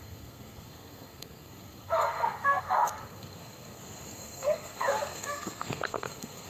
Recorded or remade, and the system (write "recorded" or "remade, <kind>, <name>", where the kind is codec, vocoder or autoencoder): remade, codec, SNAC